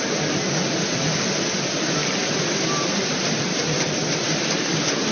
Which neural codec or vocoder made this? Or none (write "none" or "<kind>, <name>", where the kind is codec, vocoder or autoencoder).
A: none